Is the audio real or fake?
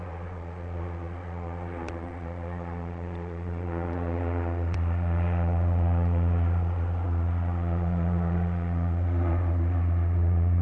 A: fake